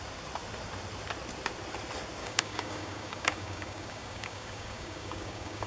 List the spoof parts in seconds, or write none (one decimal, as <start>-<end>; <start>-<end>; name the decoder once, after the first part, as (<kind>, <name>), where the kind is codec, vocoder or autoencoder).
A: 2.2-5.7 (codec, DAC)